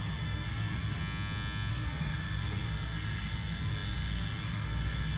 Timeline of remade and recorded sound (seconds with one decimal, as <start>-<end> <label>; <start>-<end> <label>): 0.0-1.0 remade; 1.0-1.7 recorded; 1.7-5.2 remade